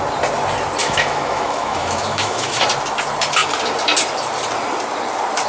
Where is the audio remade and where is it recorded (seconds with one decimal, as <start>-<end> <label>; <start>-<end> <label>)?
0.0-0.8 recorded; 0.8-2.6 remade; 2.6-5.5 recorded